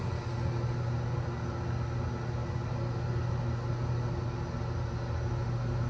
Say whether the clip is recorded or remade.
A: recorded